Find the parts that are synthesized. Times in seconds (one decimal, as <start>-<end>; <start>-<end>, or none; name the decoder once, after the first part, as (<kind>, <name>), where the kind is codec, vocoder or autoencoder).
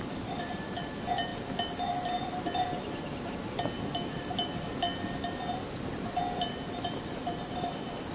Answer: none